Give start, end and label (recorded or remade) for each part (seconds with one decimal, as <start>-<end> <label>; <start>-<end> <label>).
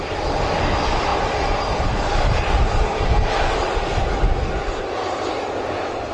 0.0-6.1 recorded